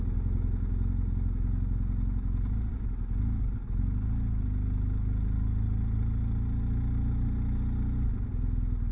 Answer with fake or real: real